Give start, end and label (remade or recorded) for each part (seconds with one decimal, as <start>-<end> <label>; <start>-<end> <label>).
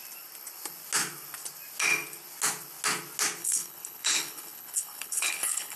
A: 0.0-3.4 recorded; 3.4-5.8 remade